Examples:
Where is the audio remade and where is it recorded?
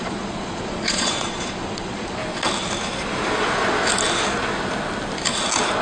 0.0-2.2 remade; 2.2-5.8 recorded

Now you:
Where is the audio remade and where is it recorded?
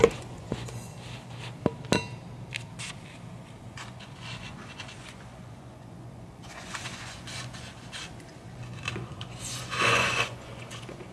0.0-0.9 remade; 0.9-3.6 recorded; 3.6-11.1 remade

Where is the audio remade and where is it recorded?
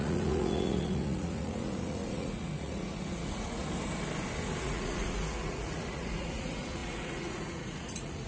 0.0-3.6 remade; 3.6-4.6 recorded; 4.6-8.3 remade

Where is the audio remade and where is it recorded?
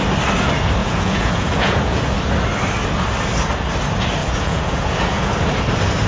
0.0-0.8 recorded; 0.8-2.0 remade; 2.0-4.2 recorded; 4.2-5.3 remade; 5.3-6.1 recorded